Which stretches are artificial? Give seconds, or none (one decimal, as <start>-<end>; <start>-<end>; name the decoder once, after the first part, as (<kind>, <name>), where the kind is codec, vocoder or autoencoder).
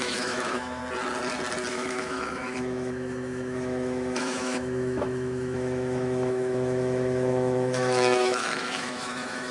0.0-0.8 (autoencoder, DAC-VAE); 1.7-9.5